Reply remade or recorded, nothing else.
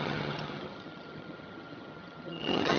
remade